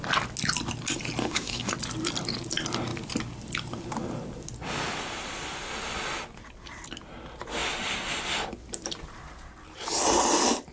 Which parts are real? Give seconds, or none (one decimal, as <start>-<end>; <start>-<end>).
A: 0.0-1.2; 1.7-10.7